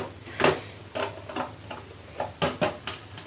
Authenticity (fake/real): real